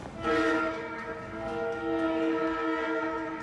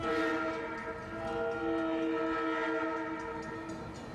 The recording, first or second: second